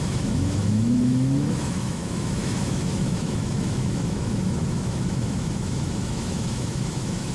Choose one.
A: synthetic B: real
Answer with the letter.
A